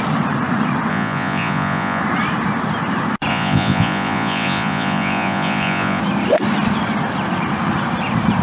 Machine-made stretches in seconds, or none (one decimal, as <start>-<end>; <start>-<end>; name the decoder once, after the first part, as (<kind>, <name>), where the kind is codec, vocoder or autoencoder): 0.9-2.0 (vocoder, Vocos); 3.3-6.0